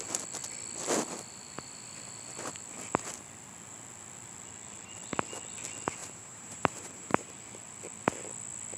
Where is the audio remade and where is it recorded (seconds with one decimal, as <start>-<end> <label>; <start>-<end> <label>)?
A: 0.0-6.0 recorded; 6.0-7.3 remade; 7.3-8.8 recorded